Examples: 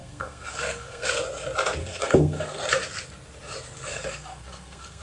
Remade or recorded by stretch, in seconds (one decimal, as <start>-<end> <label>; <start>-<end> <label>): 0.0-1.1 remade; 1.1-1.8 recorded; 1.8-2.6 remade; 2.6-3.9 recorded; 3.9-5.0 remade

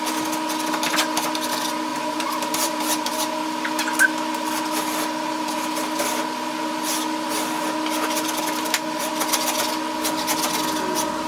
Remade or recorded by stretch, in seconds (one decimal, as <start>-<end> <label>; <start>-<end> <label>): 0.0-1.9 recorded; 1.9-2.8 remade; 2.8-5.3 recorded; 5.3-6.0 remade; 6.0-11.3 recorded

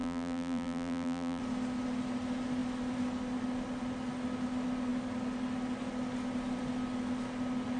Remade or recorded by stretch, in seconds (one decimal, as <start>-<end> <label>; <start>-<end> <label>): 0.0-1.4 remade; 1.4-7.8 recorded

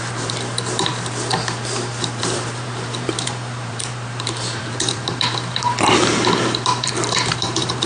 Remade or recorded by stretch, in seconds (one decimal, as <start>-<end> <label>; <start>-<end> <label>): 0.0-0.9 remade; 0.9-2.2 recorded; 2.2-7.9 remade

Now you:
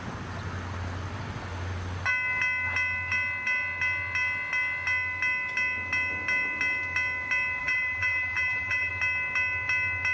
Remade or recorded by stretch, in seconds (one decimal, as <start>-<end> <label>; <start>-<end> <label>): 0.0-7.6 recorded; 7.6-8.9 remade; 8.9-10.1 recorded